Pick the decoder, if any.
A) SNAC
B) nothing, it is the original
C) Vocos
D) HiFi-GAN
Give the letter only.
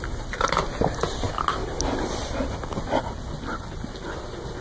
B